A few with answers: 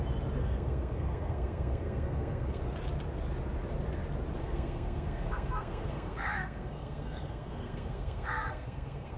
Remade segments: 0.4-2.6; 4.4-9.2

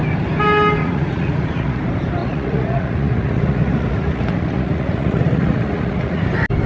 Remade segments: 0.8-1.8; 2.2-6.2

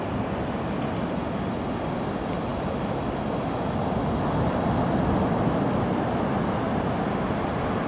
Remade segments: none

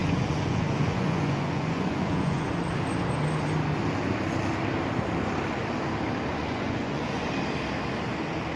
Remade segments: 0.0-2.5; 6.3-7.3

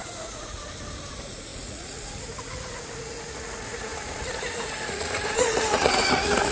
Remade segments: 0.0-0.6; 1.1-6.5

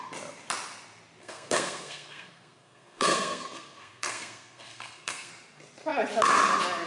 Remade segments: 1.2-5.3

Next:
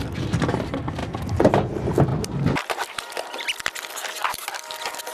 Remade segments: 1.0-1.7; 2.1-3.9

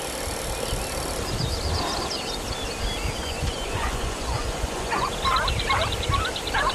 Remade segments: 3.2-5.1